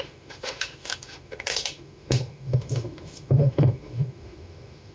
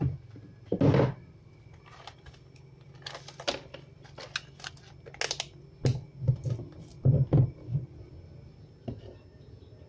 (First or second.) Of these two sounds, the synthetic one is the first